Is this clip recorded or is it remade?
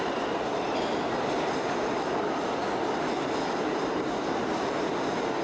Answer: recorded